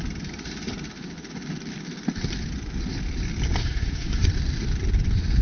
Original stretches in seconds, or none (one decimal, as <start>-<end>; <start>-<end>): 0.0-3.6; 4.3-5.4